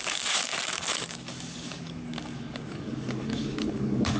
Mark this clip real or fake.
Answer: fake